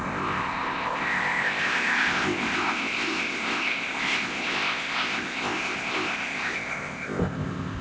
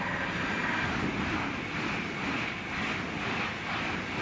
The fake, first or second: first